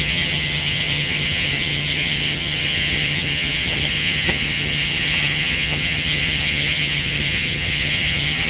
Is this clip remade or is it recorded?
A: remade